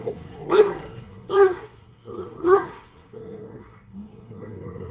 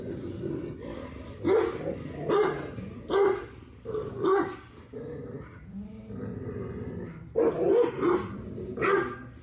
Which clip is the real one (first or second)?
second